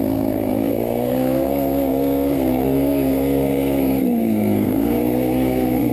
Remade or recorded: remade